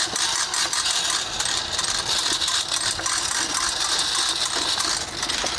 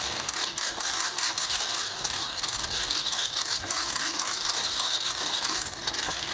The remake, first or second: second